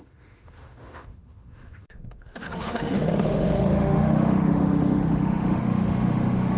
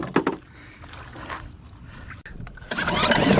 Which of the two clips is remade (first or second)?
first